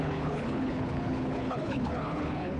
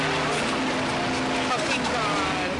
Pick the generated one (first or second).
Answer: first